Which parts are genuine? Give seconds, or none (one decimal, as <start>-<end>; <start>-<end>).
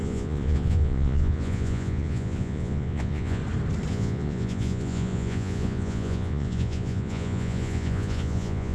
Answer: 3.4-3.9